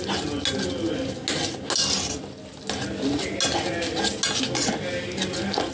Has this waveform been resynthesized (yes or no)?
no